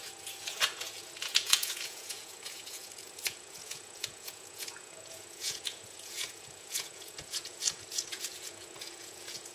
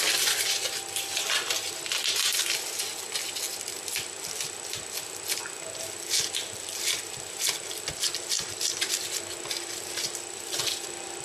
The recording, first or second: second